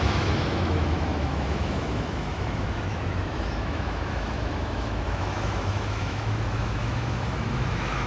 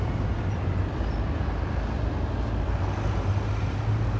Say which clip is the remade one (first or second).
first